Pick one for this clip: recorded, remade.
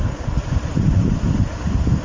recorded